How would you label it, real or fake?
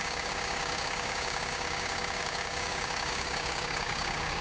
fake